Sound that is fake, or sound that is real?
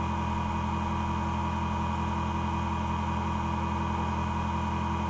real